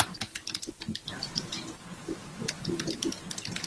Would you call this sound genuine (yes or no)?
yes